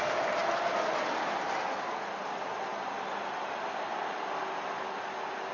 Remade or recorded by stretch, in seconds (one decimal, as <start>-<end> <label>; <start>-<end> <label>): 0.0-5.5 recorded

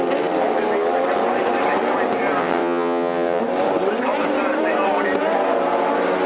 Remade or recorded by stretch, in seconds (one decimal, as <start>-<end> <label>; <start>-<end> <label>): 0.0-2.4 recorded; 2.4-3.4 remade; 3.4-6.3 recorded